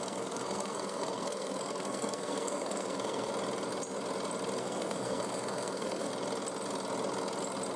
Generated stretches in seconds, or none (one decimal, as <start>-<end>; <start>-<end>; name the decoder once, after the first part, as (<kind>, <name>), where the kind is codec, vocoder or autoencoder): 0.0-3.3 (codec, SNAC); 4.6-6.1